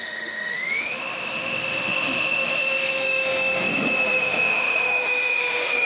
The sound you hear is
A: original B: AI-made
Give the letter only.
B